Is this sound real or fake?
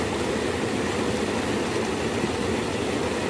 real